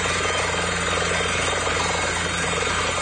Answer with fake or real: real